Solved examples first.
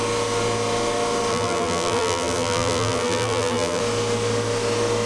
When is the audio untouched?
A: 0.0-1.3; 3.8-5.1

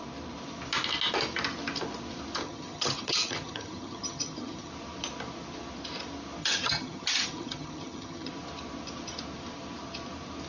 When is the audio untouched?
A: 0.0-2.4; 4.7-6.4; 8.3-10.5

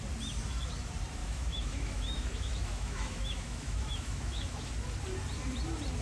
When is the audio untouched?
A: 0.0-1.2; 4.7-6.0

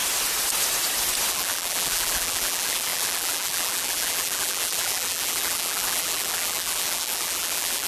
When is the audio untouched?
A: 0.0-1.3